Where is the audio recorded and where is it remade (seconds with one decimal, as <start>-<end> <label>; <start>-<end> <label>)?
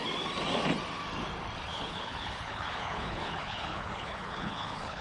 0.0-1.7 recorded; 1.7-5.0 remade